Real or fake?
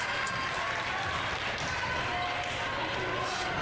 real